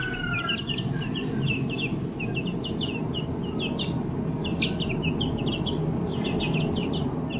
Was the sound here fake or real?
real